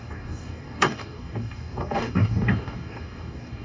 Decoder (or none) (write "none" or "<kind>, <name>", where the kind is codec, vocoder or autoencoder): codec, DAC